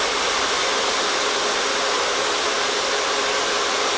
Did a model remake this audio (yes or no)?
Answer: no